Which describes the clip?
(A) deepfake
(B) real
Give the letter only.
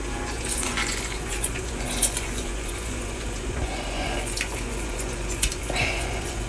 A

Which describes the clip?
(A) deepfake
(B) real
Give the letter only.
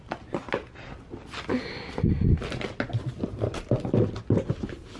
B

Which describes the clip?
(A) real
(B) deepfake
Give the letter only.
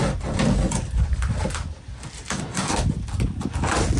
A